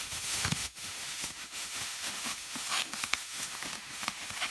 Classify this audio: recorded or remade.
remade